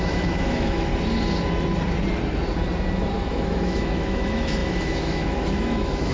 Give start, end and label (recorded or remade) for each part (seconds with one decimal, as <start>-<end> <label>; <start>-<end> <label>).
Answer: 0.0-0.9 remade; 0.9-3.3 recorded; 3.3-6.1 remade